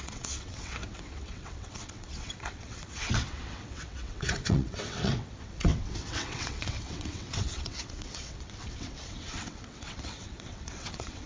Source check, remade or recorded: remade